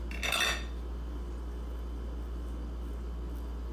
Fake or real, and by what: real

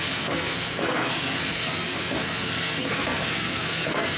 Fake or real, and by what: fake, codec, SNAC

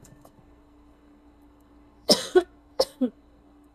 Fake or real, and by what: fake, codec, SNAC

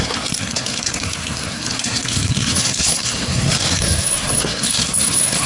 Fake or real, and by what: fake, codec, SNAC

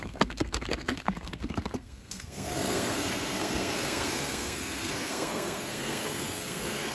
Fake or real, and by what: fake, codec, SNAC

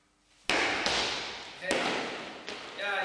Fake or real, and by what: real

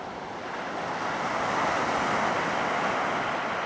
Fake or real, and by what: real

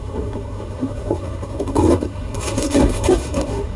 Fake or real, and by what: fake, codec, SNAC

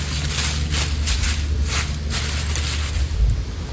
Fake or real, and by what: real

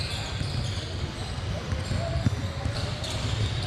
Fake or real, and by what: real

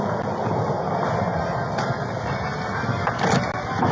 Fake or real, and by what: real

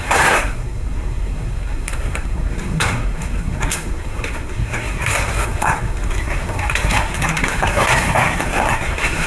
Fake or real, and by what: fake, codec, SNAC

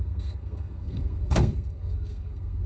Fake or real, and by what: fake, codec, SNAC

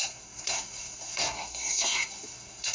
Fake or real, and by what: fake, codec, SNAC